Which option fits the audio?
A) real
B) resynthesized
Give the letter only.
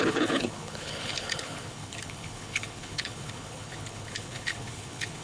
B